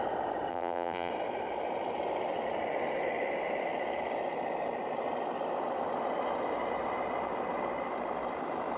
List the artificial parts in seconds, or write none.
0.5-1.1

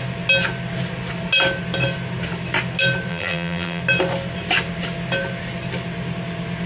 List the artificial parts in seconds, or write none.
3.1-3.8

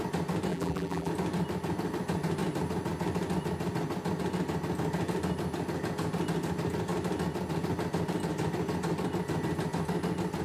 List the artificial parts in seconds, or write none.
0.5-1.1

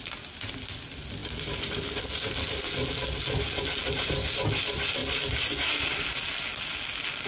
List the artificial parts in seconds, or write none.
none